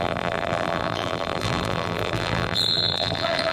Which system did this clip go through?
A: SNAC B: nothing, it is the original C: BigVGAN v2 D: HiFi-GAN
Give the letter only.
C